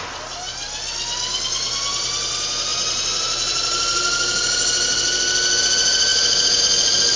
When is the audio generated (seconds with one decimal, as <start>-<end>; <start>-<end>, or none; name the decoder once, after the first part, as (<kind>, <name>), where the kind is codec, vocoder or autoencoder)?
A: none

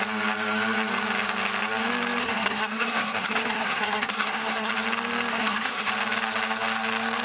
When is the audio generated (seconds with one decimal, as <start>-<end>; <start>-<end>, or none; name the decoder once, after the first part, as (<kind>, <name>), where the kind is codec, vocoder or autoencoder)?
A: 2.2-4.7 (codec, SNAC); 5.3-5.9

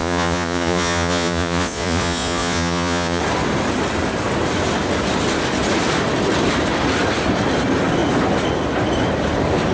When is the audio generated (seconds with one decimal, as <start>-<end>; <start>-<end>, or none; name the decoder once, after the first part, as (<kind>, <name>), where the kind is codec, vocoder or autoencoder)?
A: 0.0-3.2 (vocoder, Vocos)